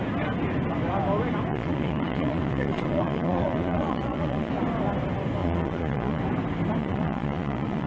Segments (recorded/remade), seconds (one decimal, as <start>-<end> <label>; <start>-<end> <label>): 0.0-1.5 recorded; 1.5-4.5 remade; 4.5-5.4 recorded; 5.4-6.2 remade; 6.2-6.8 recorded; 6.8-7.9 remade